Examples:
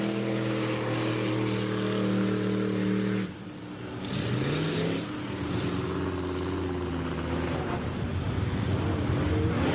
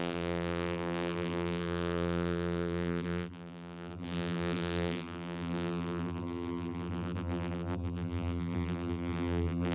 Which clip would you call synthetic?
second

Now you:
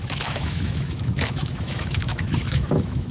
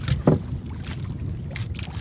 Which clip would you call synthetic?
first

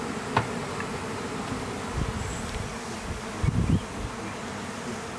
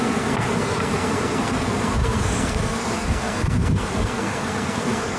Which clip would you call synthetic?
second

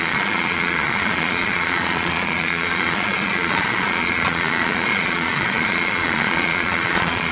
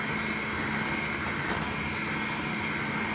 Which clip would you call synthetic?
first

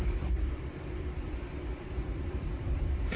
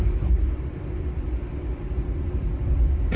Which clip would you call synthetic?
first